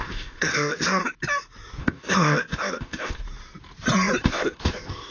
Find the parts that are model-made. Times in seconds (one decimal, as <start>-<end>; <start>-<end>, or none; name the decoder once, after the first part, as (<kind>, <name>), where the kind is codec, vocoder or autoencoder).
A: 0.0-1.0 (codec, ZipCodec); 1.8-3.2; 4.2-5.1